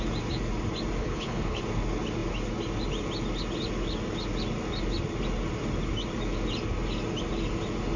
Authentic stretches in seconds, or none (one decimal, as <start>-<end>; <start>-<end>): 0.0-1.0; 1.6-8.0